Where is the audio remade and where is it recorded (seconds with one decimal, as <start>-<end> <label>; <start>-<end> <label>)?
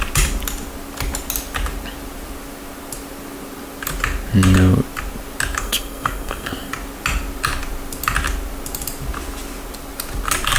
0.0-5.6 recorded; 5.6-6.7 remade; 6.7-10.6 recorded